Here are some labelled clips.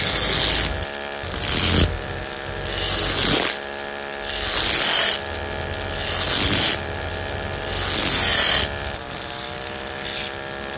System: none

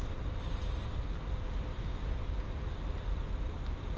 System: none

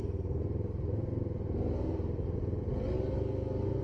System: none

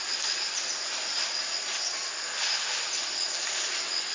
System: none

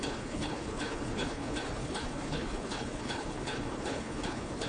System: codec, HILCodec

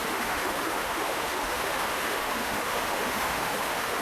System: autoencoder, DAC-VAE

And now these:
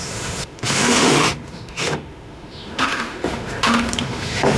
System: autoencoder, DAC-VAE